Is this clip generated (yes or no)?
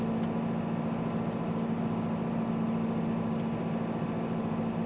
no